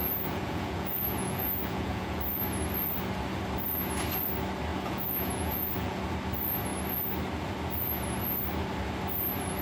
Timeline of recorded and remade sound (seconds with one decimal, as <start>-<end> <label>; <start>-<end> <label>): 0.0-2.2 remade; 2.2-4.7 recorded; 4.7-6.0 remade; 6.0-9.6 recorded